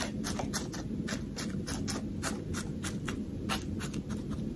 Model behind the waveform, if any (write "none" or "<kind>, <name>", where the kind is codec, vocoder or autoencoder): none